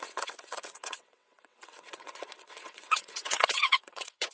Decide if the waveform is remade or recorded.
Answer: remade